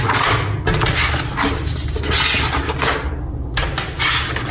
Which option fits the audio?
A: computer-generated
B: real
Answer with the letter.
B